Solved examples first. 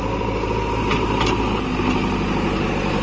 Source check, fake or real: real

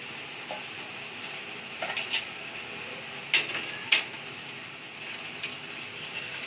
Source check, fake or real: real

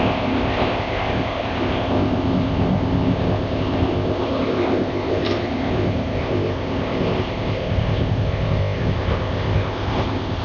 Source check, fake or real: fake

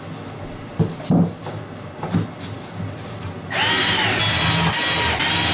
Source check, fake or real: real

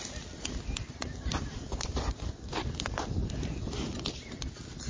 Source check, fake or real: real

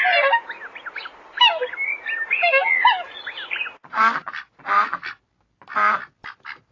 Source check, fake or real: real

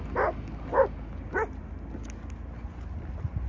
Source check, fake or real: real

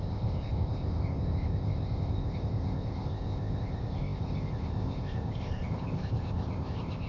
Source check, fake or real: fake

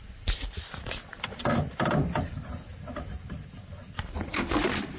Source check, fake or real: real